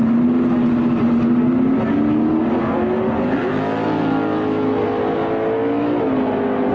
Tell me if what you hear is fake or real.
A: real